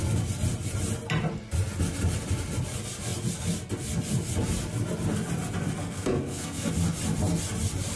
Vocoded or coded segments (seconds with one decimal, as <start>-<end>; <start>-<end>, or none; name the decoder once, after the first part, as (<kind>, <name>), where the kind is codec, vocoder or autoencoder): 5.8-6.7 (codec, SNAC)